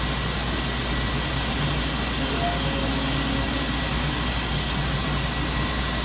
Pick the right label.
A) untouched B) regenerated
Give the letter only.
A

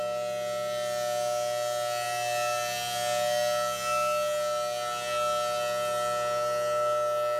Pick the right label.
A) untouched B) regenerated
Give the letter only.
A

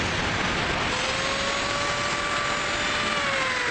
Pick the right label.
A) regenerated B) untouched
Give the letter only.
B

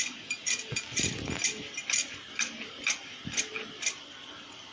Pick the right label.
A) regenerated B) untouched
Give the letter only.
B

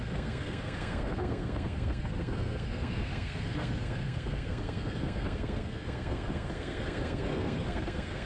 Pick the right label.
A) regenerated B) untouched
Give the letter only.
A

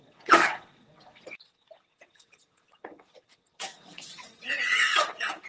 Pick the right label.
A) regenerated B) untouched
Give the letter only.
A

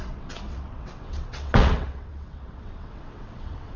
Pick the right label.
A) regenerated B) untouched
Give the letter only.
A